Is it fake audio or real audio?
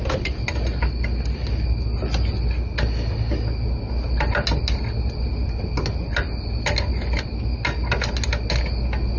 real